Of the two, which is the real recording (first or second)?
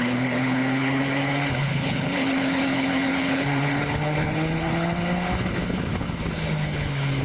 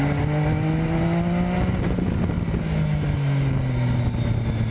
second